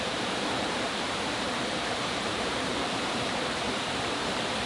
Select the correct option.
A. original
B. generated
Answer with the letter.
B